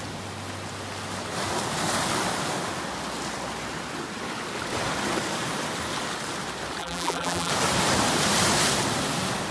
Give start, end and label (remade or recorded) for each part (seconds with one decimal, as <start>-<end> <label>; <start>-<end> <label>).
0.0-6.8 recorded; 6.8-7.5 remade; 7.5-9.5 recorded